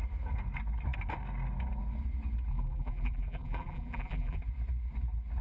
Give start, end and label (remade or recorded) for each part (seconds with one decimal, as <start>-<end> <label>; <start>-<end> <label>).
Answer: 0.0-2.5 recorded; 2.5-4.4 remade; 4.4-5.4 recorded